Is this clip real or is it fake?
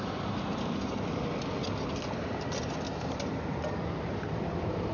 real